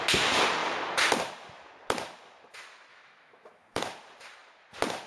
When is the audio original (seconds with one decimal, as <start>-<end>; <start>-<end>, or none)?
0.0-2.9; 3.8-5.1